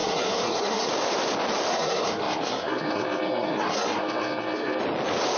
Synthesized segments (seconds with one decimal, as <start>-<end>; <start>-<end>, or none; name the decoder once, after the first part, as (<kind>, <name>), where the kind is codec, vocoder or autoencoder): 0.0-0.9 (codec, SNAC); 1.7-4.8